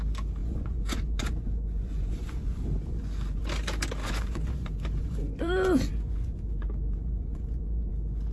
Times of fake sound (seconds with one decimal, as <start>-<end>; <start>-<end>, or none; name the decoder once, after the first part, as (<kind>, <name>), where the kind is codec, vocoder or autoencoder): 0.4-3.4 (vocoder, Vocos); 4.0-7.9